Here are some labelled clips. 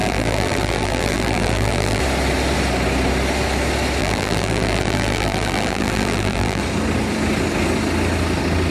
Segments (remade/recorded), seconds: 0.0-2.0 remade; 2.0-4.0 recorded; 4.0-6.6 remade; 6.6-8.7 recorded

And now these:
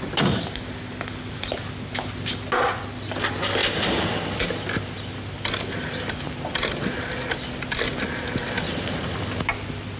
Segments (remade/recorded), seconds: 0.0-10.0 recorded

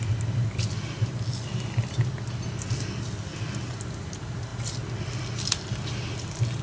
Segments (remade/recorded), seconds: 0.0-6.6 recorded

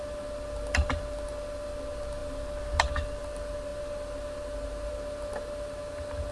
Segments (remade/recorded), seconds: 0.0-6.3 recorded